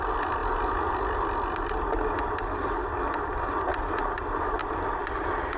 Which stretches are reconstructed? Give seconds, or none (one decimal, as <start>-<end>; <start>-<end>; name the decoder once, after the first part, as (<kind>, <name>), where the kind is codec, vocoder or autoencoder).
none